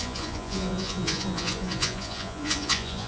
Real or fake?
fake